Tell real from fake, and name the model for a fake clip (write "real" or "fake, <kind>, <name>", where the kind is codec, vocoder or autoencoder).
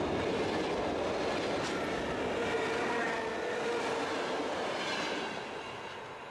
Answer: real